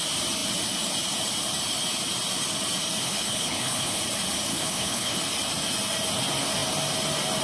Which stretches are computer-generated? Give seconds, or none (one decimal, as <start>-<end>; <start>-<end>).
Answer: 3.0-4.0; 4.5-5.2